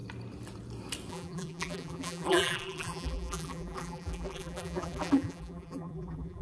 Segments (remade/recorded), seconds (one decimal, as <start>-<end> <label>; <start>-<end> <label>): 0.0-1.1 recorded; 1.1-6.4 remade